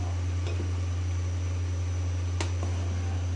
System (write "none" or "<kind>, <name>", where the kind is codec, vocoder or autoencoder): none